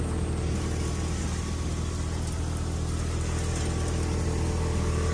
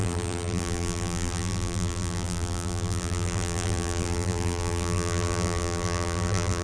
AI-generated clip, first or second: second